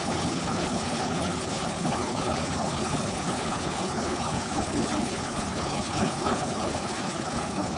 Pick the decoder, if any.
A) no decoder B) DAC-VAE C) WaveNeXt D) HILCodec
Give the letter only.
D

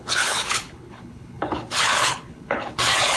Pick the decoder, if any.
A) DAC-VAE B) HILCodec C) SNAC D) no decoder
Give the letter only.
B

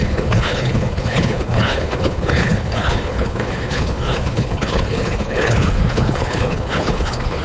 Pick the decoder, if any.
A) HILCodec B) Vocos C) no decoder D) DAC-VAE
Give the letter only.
A